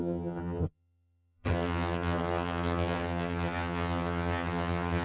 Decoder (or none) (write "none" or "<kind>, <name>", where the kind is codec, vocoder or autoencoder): vocoder, HiFi-GAN